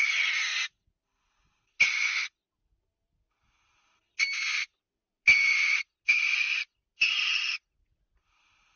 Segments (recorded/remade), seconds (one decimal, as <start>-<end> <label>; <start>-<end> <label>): 0.0-8.8 recorded